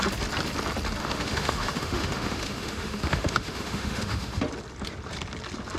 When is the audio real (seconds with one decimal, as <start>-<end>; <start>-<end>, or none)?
0.0-1.0; 4.4-5.8